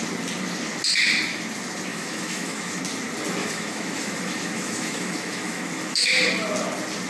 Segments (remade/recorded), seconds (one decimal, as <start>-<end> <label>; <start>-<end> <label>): 0.0-1.9 recorded; 1.9-2.8 remade; 2.8-3.4 recorded; 3.4-6.1 remade; 6.1-7.1 recorded